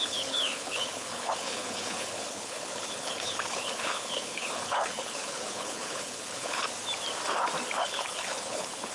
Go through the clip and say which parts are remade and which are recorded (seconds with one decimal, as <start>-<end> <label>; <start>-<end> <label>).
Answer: 0.0-6.6 remade; 6.6-7.8 recorded; 7.8-8.9 remade